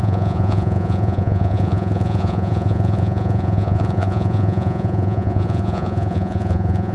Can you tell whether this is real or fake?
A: fake